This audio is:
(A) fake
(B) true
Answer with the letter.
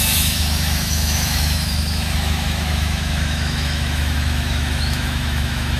A